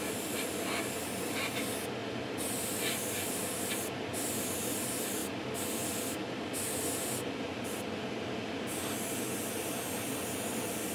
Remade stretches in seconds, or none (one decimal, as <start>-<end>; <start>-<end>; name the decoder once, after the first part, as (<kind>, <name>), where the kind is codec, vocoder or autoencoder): none